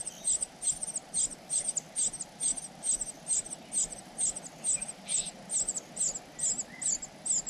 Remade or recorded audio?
recorded